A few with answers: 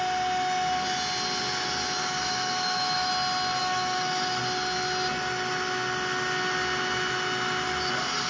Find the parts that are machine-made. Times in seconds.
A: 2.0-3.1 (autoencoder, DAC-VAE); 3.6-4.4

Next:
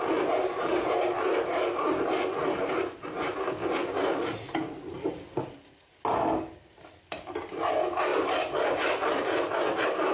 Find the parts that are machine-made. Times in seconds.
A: none